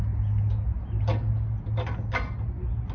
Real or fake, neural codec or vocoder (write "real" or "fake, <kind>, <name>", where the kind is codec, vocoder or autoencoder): real